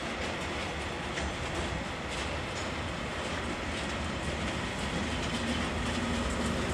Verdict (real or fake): real